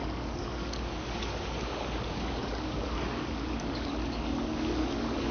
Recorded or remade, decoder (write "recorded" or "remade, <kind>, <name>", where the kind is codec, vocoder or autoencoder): remade, codec, DAC